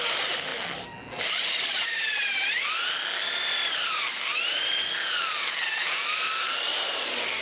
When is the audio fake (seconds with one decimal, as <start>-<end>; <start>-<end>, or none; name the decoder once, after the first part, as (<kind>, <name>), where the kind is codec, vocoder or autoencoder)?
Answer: 0.0-0.5 (vocoder, BigVGAN v2); 1.3-2.2; 3.8-4.8; 5.8-7.4